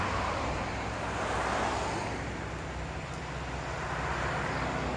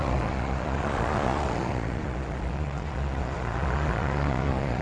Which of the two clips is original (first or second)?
first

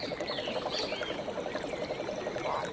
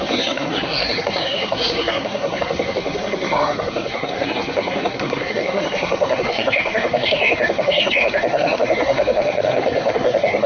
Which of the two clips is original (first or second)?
first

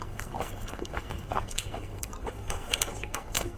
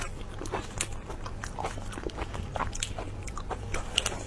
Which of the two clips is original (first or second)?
second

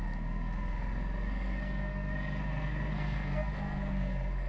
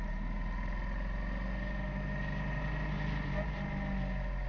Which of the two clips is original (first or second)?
second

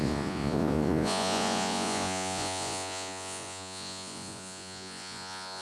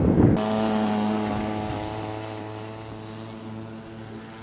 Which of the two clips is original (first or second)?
second